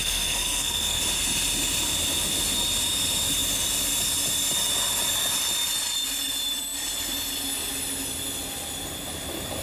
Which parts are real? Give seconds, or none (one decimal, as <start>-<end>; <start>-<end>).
1.0-9.6